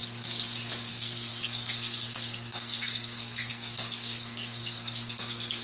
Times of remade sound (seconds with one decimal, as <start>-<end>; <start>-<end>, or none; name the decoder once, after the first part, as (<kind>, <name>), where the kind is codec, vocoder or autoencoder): 0.9-5.6 (codec, SNAC)